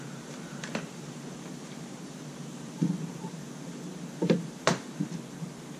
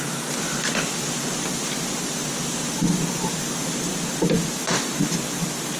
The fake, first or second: first